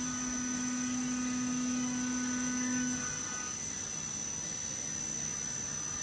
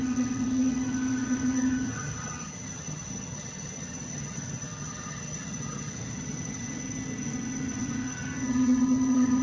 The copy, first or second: second